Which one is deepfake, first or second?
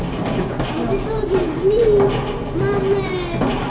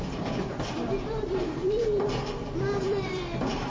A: second